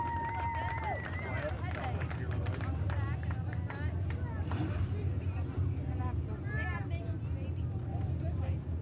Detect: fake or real real